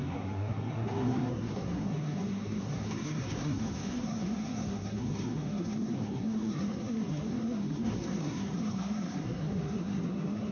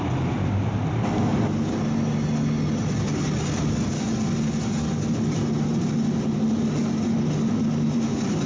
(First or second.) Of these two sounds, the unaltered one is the second